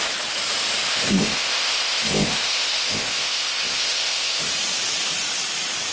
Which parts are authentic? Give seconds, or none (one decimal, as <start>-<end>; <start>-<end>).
0.0-0.9; 4.4-5.9